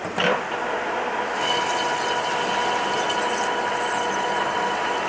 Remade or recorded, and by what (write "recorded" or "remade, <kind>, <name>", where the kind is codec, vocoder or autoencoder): recorded